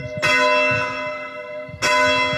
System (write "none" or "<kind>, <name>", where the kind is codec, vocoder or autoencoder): none